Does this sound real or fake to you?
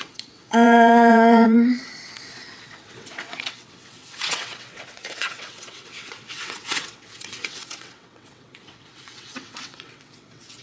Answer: fake